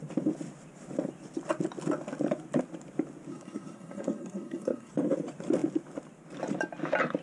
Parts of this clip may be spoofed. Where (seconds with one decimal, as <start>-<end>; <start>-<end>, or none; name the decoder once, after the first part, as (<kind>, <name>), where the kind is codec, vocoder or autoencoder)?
3.3-4.9 (codec, SNAC)